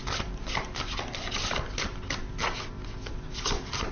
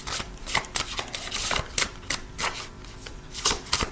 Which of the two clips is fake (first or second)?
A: second